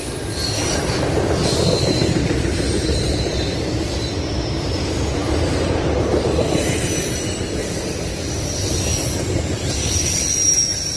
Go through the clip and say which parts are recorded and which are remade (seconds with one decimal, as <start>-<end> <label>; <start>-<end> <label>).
0.0-1.4 recorded; 1.4-3.8 remade; 3.8-7.6 recorded; 7.6-8.2 remade; 8.2-11.0 recorded